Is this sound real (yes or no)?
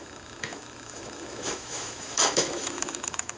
no